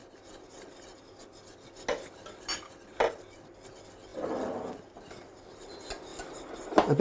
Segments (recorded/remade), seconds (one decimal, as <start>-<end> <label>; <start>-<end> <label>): 0.0-7.0 recorded